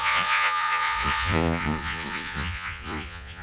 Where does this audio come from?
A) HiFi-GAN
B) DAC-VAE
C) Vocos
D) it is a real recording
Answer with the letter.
C